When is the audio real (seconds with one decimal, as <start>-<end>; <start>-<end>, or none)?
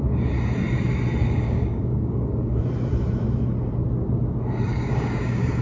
0.0-1.2; 2.6-4.7